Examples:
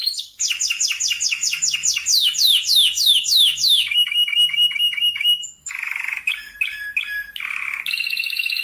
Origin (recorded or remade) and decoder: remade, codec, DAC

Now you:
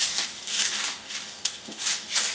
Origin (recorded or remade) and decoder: remade, codec, DAC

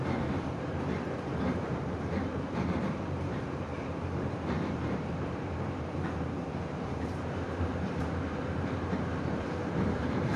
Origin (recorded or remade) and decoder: remade, vocoder, BigVGAN v2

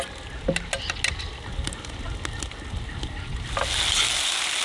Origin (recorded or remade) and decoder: recorded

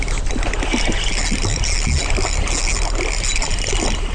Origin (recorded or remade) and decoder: recorded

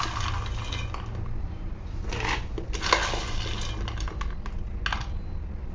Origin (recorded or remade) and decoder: recorded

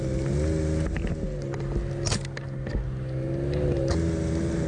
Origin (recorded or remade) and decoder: recorded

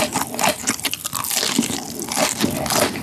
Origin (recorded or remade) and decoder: remade, vocoder, BigVGAN v2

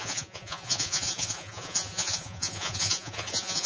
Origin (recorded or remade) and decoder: remade, vocoder, Vocos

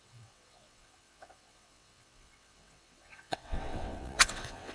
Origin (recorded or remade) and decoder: remade, vocoder, WaveNeXt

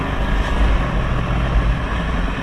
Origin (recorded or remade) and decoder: recorded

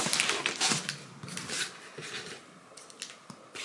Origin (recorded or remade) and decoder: recorded